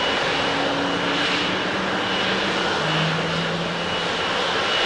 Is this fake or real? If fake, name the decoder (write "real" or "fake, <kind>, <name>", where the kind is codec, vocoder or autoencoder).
real